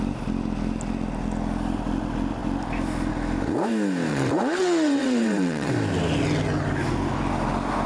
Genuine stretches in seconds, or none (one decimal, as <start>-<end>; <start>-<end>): 0.0-4.1; 5.7-7.9